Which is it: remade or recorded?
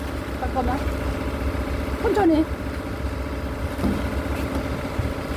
recorded